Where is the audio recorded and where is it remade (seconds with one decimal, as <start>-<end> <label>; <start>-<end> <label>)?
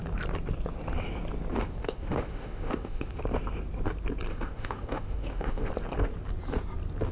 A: 0.0-1.8 recorded; 1.8-3.2 remade; 3.2-4.3 recorded; 4.3-5.7 remade; 5.7-7.1 recorded